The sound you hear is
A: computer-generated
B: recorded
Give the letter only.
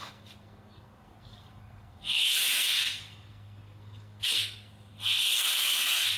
A